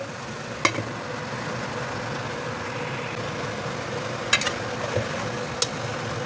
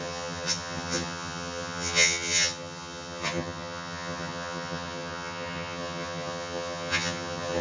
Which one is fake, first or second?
second